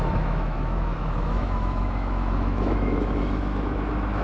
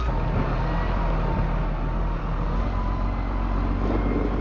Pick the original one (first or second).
second